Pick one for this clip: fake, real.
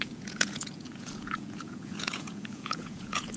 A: fake